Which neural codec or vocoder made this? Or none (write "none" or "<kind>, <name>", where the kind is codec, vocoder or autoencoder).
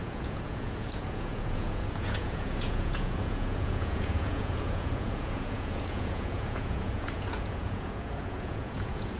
vocoder, Vocos